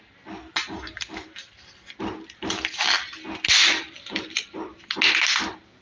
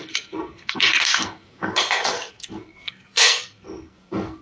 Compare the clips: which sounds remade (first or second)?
second